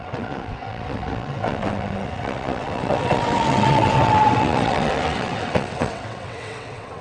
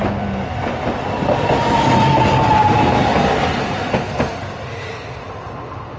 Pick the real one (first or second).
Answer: second